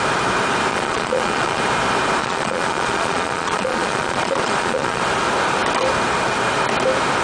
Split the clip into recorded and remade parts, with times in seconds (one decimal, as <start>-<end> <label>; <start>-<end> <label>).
0.0-0.7 recorded; 0.7-1.6 remade; 1.6-2.2 recorded; 2.2-5.0 remade; 5.0-7.2 recorded